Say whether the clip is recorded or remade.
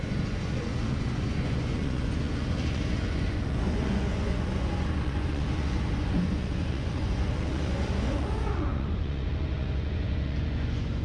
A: remade